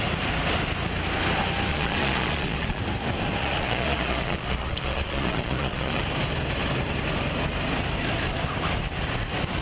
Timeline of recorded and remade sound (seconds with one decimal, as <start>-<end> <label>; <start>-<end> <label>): 0.0-1.7 recorded; 1.7-2.8 remade; 2.8-3.4 recorded; 3.4-6.0 remade; 6.0-9.6 recorded